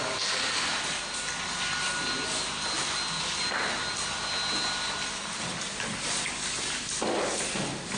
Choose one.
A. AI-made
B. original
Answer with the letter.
B